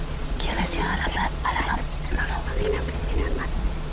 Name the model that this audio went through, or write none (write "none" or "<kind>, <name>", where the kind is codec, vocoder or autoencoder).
vocoder, Vocos